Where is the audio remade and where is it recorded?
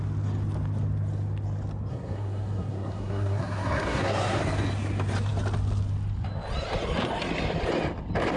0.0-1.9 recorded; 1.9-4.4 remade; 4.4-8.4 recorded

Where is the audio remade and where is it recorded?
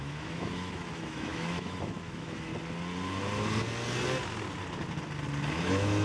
0.0-2.5 remade; 2.5-5.5 recorded; 5.5-6.0 remade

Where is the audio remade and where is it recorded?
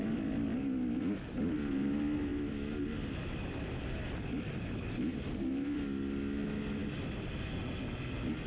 0.0-8.5 recorded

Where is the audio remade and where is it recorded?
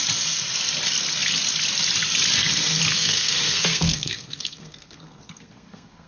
0.0-2.9 recorded; 2.9-6.1 remade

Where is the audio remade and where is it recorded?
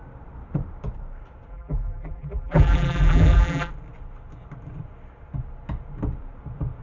0.0-1.5 recorded; 1.5-3.7 remade; 3.7-6.8 recorded